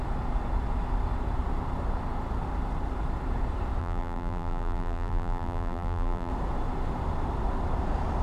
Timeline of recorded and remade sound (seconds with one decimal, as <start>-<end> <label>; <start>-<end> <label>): 0.0-3.8 recorded; 3.8-6.3 remade; 6.3-8.2 recorded